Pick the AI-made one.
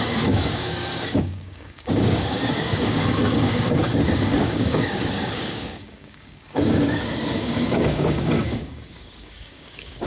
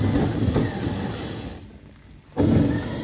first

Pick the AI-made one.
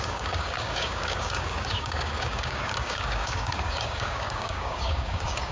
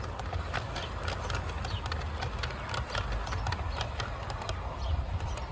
first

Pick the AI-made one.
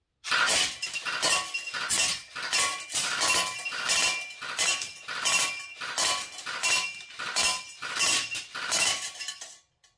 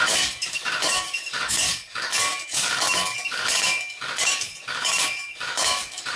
second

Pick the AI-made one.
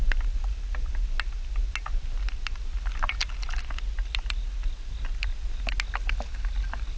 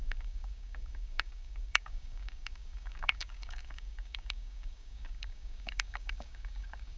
second